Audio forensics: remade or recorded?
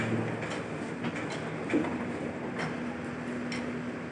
recorded